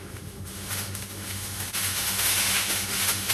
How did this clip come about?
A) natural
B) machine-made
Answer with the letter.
B